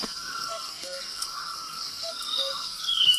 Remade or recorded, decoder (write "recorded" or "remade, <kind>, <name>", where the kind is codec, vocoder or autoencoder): remade, codec, SNAC